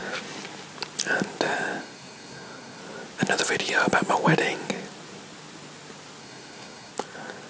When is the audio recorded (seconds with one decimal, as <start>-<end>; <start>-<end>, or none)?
0.0-1.8; 2.8-6.2; 6.9-7.5